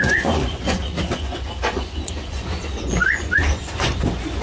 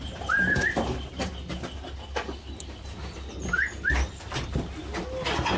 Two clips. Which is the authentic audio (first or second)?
second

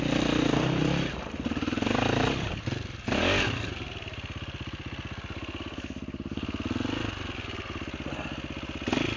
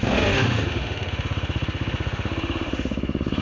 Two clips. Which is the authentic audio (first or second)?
first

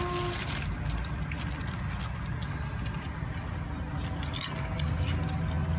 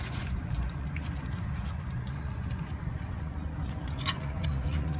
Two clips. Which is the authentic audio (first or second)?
first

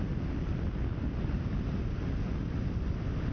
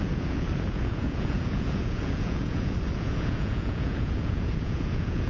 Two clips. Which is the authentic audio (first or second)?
first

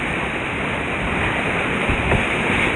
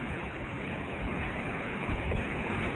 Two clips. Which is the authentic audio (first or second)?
first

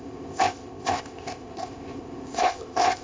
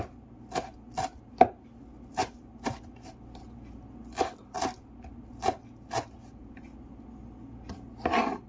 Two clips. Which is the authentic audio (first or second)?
second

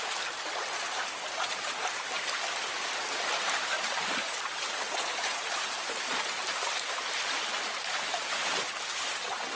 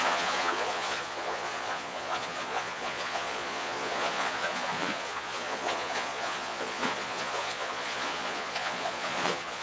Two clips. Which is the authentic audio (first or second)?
first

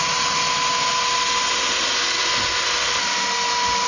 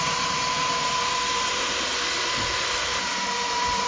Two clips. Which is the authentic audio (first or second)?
first